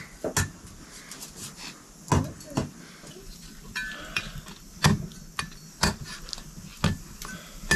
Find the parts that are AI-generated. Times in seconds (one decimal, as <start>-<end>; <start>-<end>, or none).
none